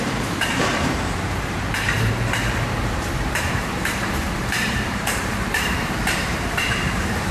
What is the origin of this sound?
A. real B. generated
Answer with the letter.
B